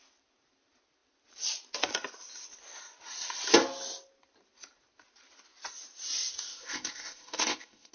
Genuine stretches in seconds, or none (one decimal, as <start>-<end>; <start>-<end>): 0.0-6.5